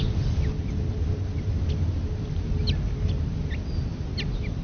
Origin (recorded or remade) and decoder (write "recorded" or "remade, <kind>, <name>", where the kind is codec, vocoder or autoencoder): recorded